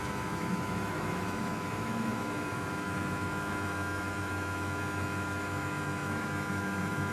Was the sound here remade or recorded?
remade